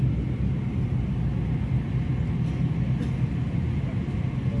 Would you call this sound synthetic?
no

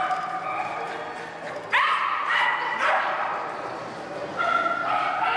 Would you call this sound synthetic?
no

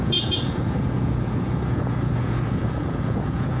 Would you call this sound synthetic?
yes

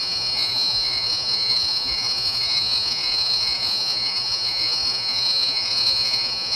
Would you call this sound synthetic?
yes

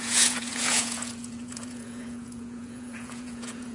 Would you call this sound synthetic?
yes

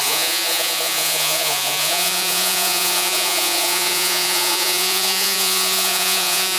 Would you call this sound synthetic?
yes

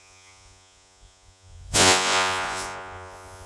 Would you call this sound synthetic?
yes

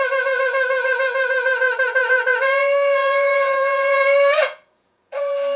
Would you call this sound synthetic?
yes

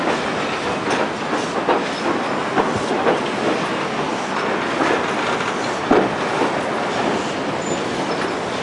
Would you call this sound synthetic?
no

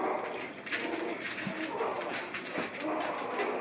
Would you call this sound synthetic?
no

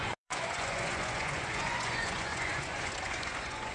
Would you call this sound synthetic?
yes